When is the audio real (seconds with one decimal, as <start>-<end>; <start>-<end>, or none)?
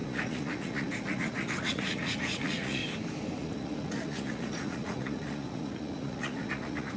2.8-3.4